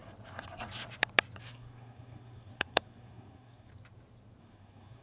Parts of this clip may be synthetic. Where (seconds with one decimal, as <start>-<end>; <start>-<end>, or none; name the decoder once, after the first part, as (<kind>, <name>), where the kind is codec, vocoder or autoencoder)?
1.4-3.7 (codec, SNAC); 4.4-5.0